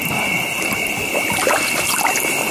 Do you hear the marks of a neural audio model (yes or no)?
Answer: no